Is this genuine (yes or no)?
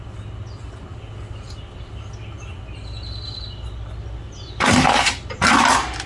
yes